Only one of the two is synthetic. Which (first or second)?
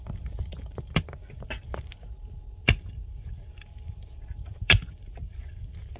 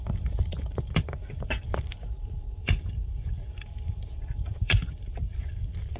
second